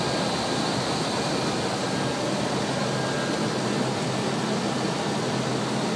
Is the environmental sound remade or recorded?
recorded